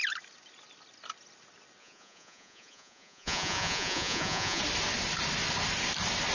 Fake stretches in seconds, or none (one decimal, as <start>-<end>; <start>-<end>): 1.8-4.6